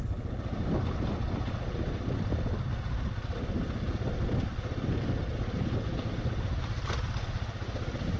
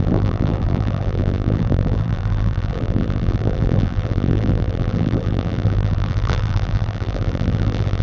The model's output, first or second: second